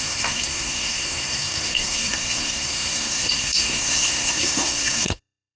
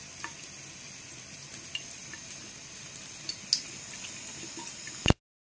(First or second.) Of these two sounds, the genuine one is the second